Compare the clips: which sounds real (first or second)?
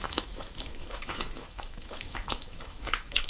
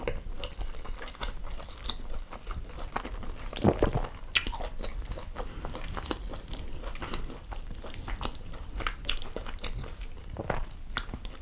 second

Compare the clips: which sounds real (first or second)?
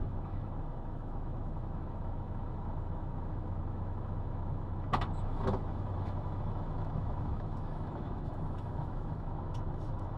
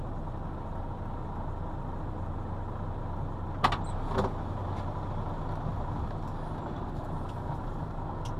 second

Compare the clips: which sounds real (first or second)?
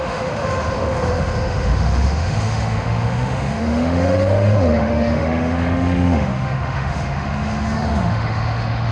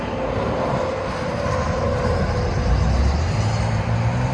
second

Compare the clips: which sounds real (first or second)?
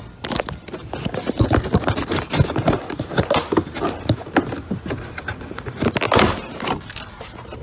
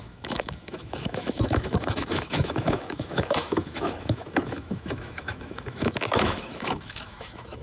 first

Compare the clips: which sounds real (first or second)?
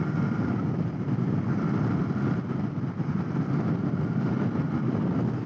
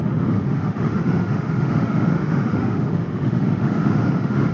first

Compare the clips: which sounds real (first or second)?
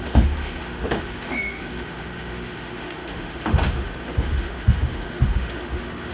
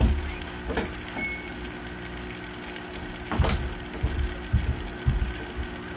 second